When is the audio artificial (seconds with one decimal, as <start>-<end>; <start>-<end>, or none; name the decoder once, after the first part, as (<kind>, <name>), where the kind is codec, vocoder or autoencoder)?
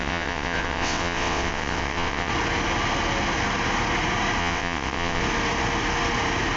0.0-2.3 (vocoder, WaveNeXt); 4.4-5.2